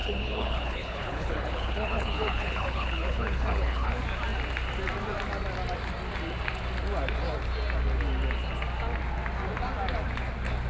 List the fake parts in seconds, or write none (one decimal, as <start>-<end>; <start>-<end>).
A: 0.0-3.9